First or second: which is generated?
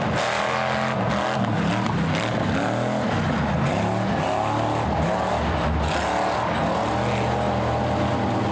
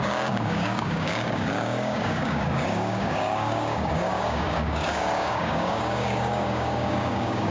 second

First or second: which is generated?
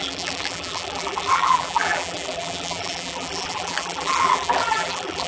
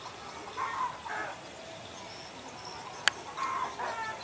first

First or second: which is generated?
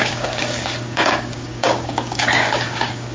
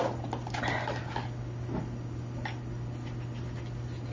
first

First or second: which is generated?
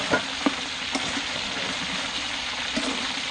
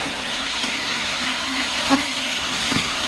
second